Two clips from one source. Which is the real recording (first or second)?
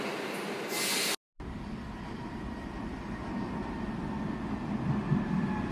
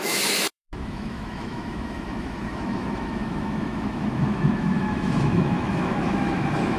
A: first